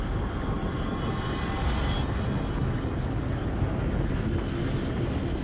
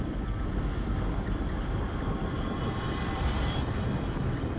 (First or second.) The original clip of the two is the first